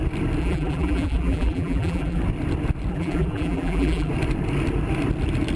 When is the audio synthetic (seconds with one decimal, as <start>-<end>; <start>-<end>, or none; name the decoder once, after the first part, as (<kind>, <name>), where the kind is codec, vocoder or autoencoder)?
0.4-2.2 (vocoder, BigVGAN v2); 2.9-4.1